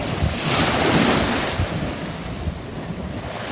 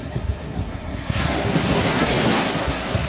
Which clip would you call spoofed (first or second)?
second